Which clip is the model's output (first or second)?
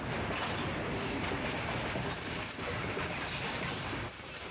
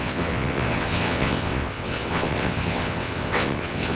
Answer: second